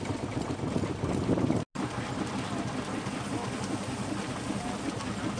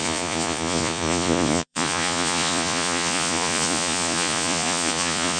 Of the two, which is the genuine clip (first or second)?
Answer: first